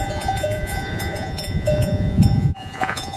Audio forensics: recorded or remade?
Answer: remade